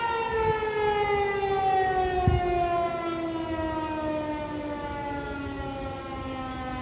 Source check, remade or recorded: recorded